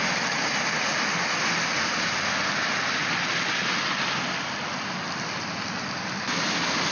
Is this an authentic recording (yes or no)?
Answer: yes